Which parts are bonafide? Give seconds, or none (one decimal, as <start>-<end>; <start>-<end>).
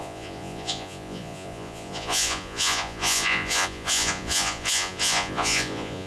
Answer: none